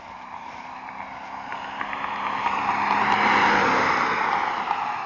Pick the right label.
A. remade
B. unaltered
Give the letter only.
B